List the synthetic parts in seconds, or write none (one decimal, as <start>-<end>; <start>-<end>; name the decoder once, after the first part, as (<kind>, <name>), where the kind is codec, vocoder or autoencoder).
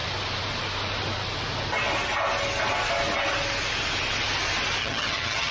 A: 4.8-5.5 (vocoder, HiFi-GAN)